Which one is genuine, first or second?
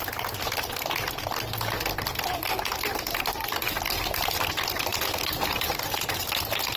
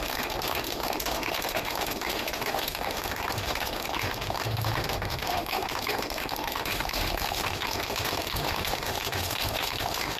first